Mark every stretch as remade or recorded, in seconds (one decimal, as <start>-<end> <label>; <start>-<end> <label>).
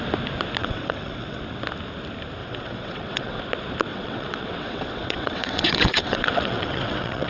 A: 0.0-0.6 recorded; 0.6-1.4 remade; 1.4-2.4 recorded; 2.4-3.4 remade; 3.4-3.9 recorded; 3.9-7.3 remade